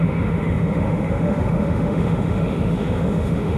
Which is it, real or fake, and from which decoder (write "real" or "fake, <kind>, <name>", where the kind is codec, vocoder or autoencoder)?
fake, autoencoder, DAC-VAE